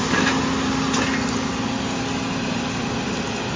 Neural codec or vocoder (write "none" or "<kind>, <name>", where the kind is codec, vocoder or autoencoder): none